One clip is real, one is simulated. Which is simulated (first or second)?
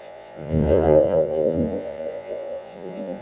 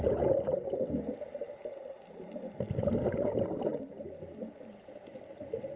first